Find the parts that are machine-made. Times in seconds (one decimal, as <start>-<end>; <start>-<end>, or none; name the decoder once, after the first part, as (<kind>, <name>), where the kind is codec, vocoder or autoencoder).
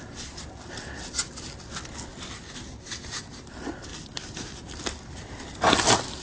none